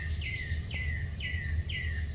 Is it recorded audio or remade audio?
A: recorded